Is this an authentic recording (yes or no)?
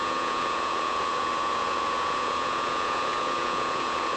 no